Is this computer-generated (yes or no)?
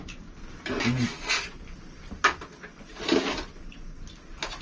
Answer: no